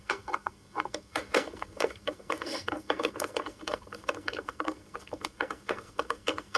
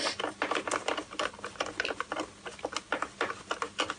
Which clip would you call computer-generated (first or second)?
first